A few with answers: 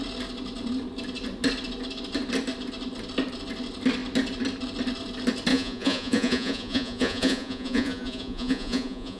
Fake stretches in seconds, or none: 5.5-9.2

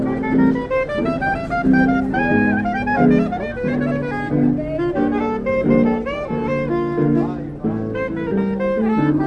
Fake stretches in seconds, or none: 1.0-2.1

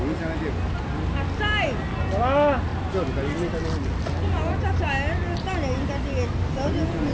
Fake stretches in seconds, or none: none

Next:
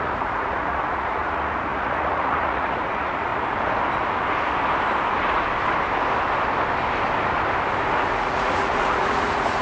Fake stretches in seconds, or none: 0.0-3.3; 8.1-9.6

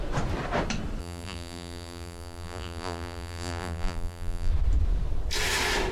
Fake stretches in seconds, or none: 1.0-4.5